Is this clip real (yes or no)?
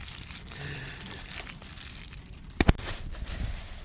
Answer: no